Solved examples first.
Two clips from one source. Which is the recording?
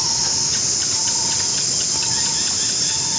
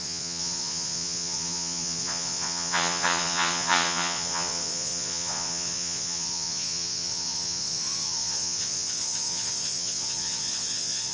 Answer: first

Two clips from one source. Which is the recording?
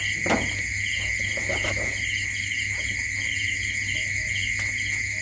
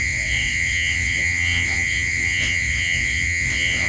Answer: first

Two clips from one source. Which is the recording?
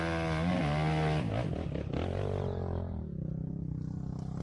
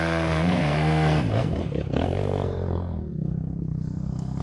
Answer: first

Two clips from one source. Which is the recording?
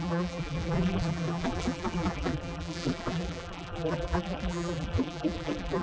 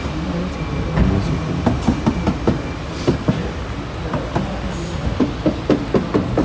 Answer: second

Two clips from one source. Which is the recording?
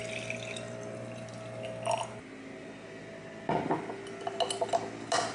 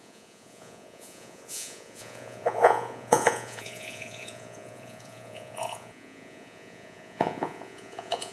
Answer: first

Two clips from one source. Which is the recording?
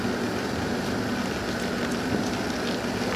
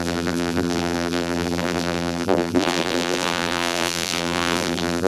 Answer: first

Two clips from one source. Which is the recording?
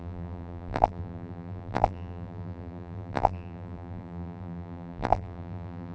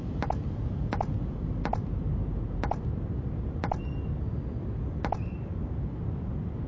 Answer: second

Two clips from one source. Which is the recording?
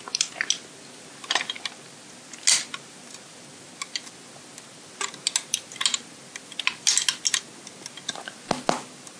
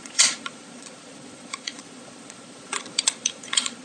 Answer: first